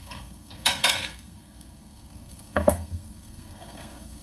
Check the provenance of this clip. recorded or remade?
remade